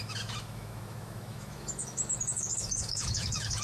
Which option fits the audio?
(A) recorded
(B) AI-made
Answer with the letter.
B